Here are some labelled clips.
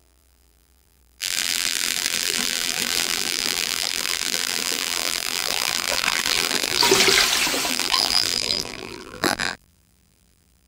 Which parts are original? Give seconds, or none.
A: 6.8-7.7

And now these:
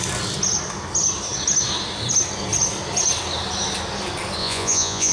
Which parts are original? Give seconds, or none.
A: 0.0-4.4

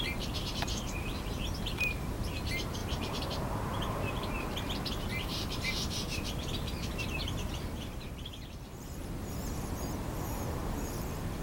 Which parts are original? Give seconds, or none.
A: none

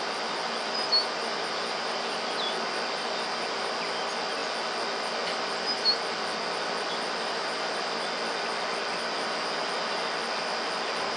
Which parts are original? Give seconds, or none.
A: 0.0-11.2

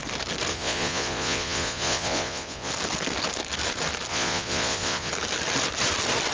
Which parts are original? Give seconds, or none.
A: 0.0-0.5; 2.7-4.1; 5.1-6.3

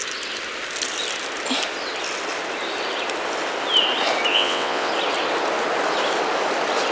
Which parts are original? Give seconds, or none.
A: 0.0-4.3; 4.9-6.9

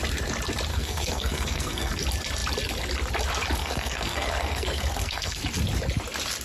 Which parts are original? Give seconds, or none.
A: 0.0-0.7; 1.9-3.6; 5.4-6.4

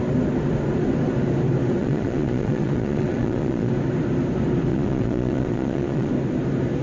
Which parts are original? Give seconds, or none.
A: 0.0-1.8; 3.7-4.7; 6.1-6.8